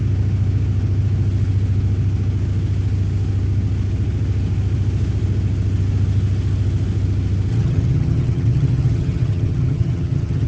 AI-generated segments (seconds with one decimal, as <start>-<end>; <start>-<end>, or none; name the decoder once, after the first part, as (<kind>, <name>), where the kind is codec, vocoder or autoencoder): 7.5-10.5 (vocoder, HiFi-GAN)